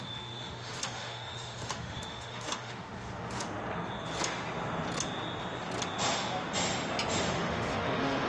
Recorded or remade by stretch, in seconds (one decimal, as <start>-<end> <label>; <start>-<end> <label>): 0.0-3.6 remade; 3.6-7.3 recorded; 7.3-8.3 remade